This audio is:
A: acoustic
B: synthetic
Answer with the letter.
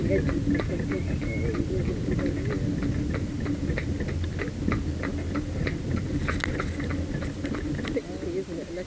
A